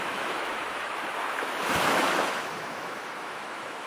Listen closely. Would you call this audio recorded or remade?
remade